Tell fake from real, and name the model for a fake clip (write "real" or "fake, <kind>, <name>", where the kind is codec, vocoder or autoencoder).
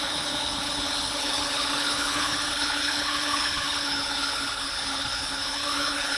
fake, codec, HILCodec